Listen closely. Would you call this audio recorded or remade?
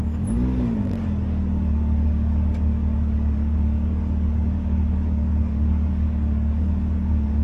remade